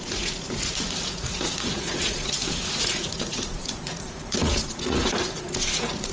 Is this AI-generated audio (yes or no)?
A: yes